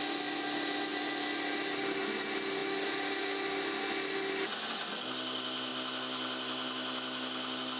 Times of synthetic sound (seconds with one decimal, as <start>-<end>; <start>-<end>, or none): none

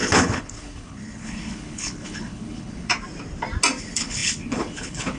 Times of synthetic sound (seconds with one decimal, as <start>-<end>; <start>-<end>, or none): 0.0-2.9; 3.8-5.2